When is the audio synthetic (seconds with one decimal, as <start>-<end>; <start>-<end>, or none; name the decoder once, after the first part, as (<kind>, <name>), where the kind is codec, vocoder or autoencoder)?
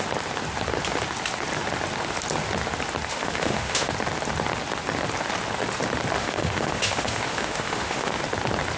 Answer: 3.1-3.9 (autoencoder, DAC-VAE); 6.2-8.2